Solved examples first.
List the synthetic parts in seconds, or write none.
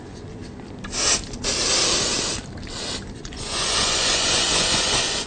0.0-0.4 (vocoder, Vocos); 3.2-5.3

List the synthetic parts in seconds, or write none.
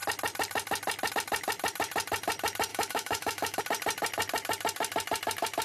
2.7-3.6 (autoencoder, DAC-VAE)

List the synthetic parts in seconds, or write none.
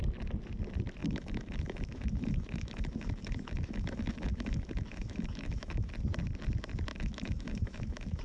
1.0-5.9 (autoencoder, DAC-VAE); 6.9-8.2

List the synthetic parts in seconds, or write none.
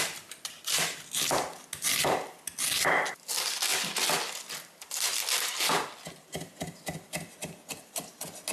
none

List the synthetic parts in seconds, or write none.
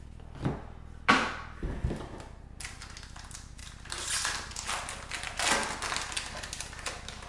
none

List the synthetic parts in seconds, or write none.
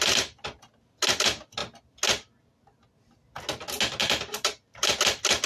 4.0-4.9 (vocoder, BigVGAN v2)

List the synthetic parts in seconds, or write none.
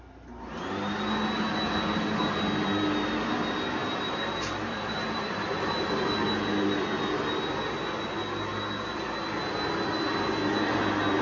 3.8-5.9 (vocoder, BigVGAN v2)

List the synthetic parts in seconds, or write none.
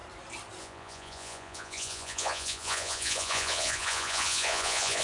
0.6-5.0 (vocoder, Vocos)